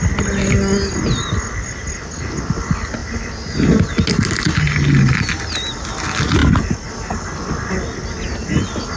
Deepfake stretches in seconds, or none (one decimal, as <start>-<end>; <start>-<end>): none